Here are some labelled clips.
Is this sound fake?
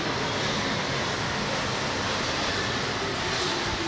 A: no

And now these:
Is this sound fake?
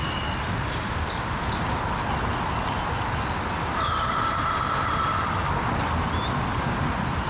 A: no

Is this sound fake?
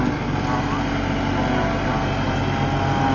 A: no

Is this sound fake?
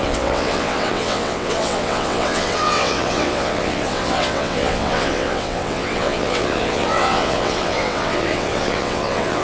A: yes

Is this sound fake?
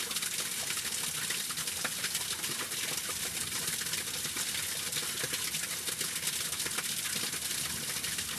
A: no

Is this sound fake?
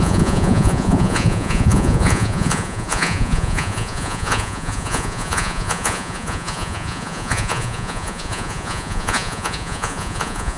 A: yes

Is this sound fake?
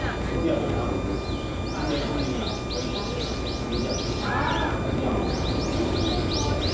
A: no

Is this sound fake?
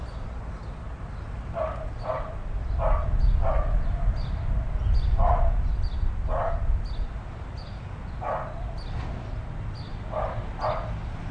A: no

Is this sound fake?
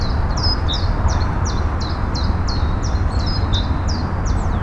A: no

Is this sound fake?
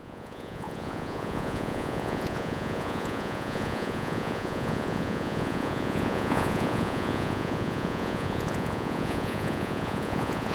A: yes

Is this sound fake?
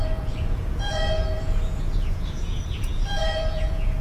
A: yes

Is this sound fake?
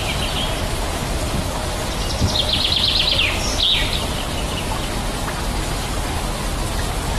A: no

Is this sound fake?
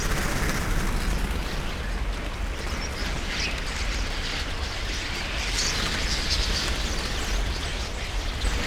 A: no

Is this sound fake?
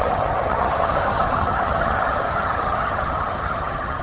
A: yes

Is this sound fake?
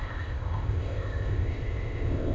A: yes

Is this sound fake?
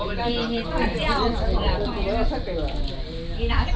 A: no